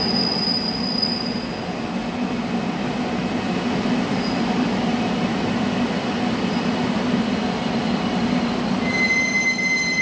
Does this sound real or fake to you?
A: real